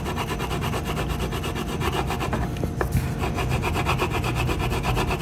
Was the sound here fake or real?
real